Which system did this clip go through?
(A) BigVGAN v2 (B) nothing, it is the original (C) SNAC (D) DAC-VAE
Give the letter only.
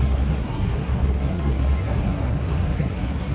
C